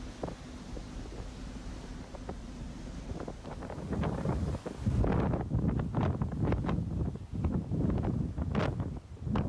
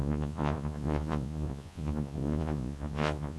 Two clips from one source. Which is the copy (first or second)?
second